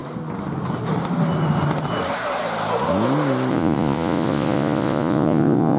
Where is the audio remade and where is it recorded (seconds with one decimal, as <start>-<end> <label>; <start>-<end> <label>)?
0.0-3.5 recorded; 3.5-5.8 remade